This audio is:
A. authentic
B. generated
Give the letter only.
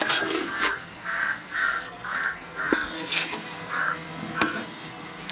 B